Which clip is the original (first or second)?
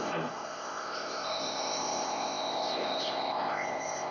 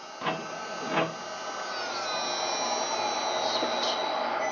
second